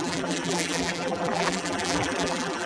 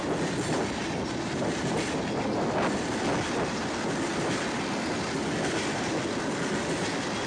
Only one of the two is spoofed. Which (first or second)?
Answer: first